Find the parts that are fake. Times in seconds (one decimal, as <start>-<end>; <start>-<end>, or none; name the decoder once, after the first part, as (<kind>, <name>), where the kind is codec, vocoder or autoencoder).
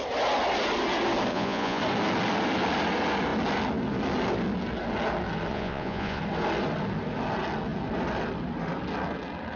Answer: 1.3-1.8 (vocoder, Vocos); 5.5-6.2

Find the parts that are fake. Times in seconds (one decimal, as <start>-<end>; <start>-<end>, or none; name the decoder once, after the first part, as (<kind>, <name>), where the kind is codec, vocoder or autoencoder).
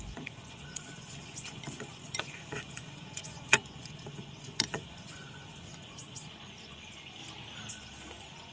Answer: 0.0-7.2 (vocoder, Vocos); 7.7-8.5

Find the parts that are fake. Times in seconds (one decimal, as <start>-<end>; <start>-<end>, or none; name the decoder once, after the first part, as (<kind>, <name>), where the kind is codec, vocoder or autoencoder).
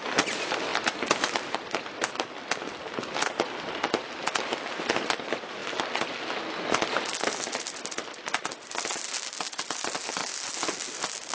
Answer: none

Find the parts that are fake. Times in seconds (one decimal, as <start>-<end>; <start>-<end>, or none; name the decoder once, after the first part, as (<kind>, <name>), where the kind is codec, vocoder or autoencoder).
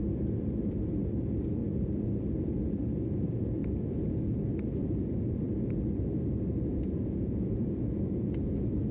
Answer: 6.7-8.3 (vocoder, Vocos)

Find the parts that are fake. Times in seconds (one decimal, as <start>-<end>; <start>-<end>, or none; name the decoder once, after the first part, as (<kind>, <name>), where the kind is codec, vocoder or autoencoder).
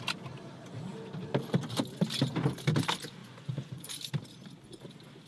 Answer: 3.2-3.8 (vocoder, Vocos)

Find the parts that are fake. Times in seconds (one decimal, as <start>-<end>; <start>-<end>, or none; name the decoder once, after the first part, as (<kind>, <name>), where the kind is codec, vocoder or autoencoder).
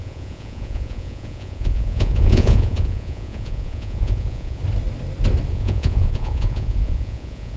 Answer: 0.0-4.6 (vocoder, Vocos); 5.5-7.6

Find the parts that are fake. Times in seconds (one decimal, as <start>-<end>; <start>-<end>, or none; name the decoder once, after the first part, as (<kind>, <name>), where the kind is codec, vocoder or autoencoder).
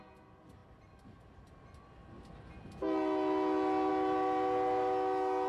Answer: none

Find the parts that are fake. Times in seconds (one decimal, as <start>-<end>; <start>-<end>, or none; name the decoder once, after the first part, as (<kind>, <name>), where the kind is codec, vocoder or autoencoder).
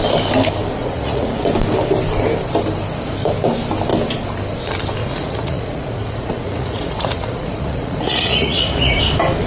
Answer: 0.8-1.4 (vocoder, Vocos); 5.0-9.0